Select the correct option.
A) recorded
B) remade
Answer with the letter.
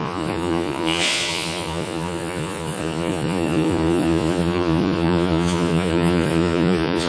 B